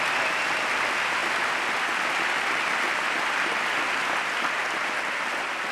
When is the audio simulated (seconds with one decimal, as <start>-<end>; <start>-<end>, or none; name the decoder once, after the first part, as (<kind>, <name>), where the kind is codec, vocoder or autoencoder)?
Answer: none